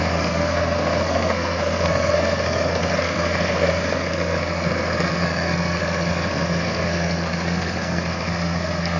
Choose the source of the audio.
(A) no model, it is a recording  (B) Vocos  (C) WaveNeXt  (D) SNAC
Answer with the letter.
D